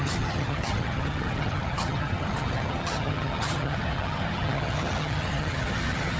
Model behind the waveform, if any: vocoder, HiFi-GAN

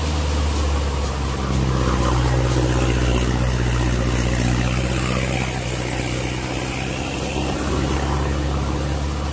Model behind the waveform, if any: none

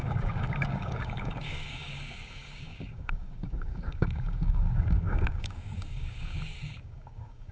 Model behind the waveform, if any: codec, DAC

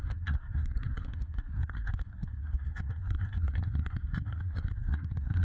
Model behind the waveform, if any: codec, SNAC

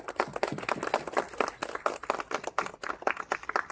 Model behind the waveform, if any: none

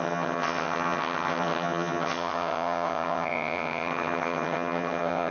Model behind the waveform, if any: vocoder, HiFi-GAN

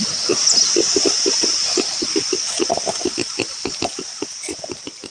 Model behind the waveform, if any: none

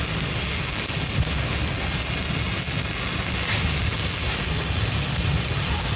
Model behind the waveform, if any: none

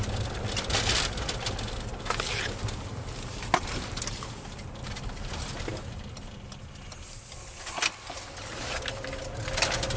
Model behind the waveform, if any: none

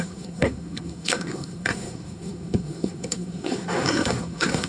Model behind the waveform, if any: codec, SNAC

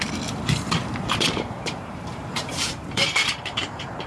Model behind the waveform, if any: vocoder, BigVGAN v2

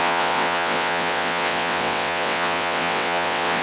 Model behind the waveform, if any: vocoder, WaveNeXt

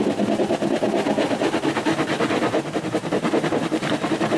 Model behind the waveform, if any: none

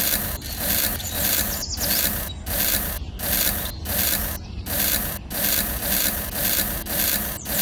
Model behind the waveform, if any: none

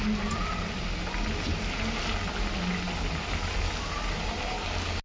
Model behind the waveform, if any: none